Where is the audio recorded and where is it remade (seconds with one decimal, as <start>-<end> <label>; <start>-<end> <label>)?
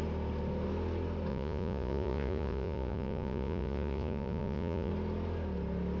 0.0-1.3 recorded; 1.3-4.9 remade; 4.9-6.0 recorded